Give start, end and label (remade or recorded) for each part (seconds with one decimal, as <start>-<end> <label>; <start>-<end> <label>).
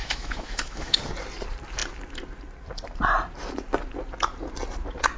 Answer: 0.0-1.0 remade; 1.0-5.2 recorded